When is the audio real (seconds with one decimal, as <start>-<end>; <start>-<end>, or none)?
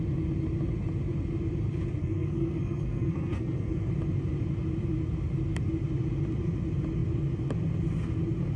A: 0.0-2.0; 3.9-8.6